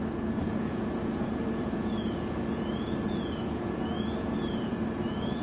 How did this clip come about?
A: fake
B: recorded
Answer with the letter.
A